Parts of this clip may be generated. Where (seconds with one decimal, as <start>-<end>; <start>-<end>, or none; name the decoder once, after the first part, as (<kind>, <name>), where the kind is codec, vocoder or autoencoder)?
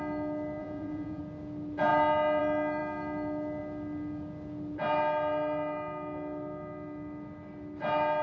0.6-1.2 (vocoder, Vocos)